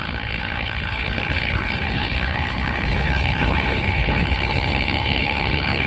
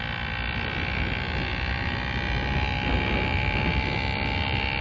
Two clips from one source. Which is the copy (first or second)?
first